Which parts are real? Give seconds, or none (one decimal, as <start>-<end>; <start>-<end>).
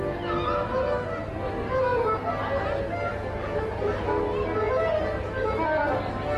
0.0-6.4